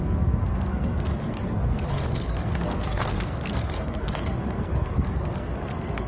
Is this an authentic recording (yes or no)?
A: no